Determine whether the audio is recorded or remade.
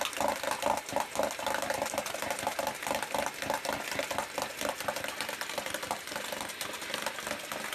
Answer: recorded